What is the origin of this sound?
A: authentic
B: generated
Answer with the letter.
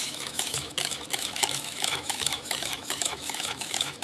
B